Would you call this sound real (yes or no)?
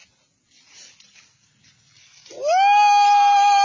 yes